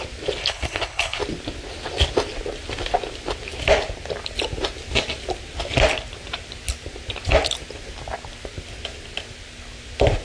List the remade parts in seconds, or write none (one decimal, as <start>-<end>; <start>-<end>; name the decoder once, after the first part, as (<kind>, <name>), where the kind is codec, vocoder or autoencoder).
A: 0.4-1.2 (codec, HILCodec)